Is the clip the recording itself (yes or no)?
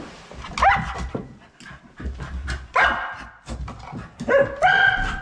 yes